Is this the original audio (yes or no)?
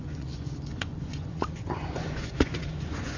no